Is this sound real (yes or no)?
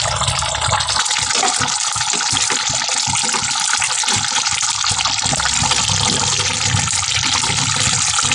yes